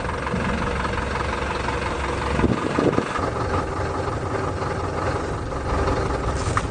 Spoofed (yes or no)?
no